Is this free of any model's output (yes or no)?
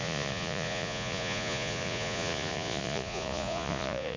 no